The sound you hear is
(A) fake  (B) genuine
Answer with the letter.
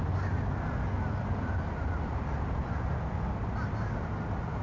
B